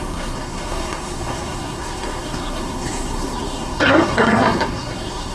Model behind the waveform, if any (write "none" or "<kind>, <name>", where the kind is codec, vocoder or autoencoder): codec, SNAC